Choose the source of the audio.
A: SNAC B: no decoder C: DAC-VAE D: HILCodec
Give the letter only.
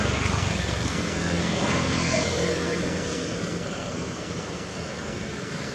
A